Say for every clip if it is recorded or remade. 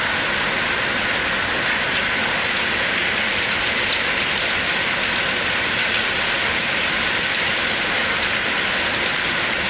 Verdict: recorded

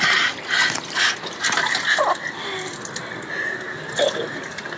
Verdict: recorded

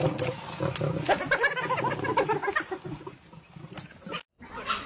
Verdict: recorded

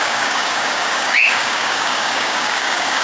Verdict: remade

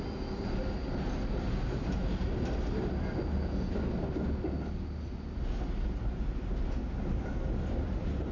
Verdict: recorded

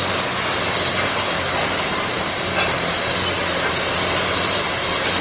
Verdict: recorded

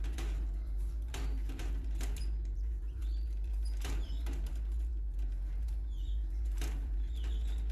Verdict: remade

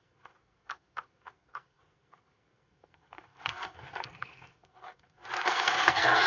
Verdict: remade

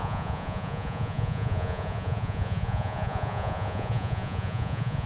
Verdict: remade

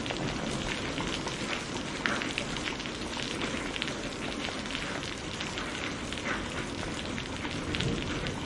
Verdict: recorded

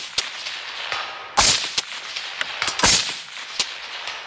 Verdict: recorded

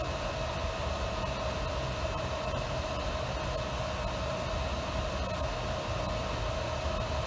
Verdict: recorded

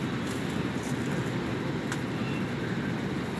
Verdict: recorded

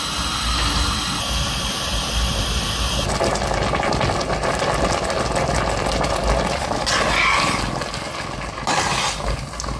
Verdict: recorded